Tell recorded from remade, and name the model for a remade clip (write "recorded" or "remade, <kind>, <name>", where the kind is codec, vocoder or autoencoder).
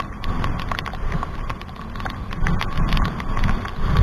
recorded